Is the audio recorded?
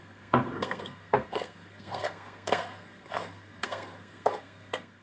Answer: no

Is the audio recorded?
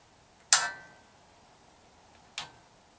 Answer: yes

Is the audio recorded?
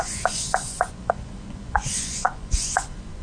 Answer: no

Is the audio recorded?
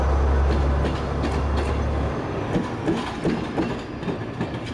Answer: yes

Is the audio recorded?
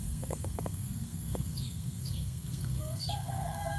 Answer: no